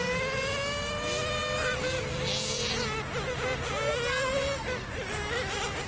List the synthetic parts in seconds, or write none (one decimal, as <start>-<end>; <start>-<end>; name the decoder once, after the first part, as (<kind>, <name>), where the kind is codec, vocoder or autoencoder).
none

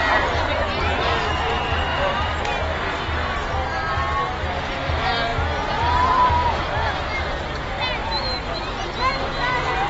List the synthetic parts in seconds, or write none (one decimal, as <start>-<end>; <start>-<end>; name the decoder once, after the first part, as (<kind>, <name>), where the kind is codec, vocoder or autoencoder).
1.9-2.4 (vocoder, BigVGAN v2); 5.3-7.2

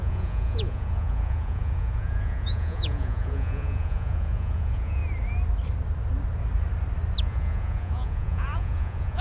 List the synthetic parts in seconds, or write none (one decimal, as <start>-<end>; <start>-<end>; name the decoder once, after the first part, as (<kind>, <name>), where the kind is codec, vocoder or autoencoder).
0.0-5.0 (vocoder, Vocos); 7.2-9.2

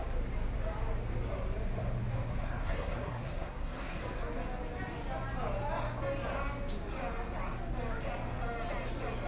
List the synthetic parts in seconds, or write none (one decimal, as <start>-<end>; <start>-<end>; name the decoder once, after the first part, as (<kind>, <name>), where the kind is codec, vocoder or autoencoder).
2.3-4.0 (codec, SNAC)

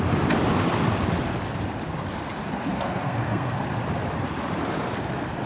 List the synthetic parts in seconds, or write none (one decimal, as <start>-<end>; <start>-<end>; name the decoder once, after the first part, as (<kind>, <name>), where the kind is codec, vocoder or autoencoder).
2.7-3.6 (codec, SNAC)

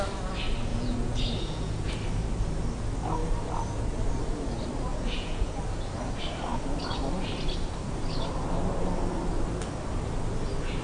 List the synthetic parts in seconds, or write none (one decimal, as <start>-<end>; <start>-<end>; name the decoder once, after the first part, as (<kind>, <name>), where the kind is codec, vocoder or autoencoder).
0.7-1.9 (vocoder, Vocos); 4.9-5.6

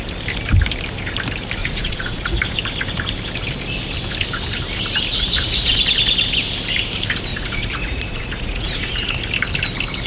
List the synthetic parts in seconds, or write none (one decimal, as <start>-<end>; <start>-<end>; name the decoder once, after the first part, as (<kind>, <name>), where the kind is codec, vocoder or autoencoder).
1.6-2.4 (vocoder, Vocos); 5.1-5.8; 7.3-9.1

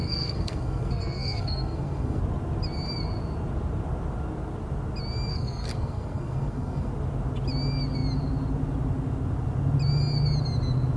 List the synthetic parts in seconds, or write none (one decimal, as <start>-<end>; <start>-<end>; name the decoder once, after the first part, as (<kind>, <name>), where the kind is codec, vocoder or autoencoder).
0.0-2.2 (codec, SNAC); 5.3-6.9